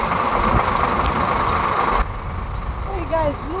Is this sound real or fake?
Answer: fake